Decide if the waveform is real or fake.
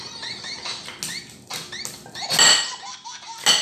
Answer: real